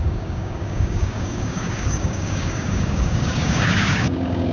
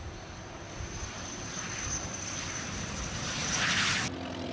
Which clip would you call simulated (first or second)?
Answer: first